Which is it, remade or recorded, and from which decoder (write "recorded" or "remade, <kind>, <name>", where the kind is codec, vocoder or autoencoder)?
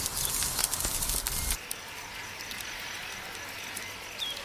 recorded